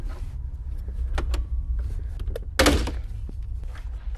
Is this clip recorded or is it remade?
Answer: recorded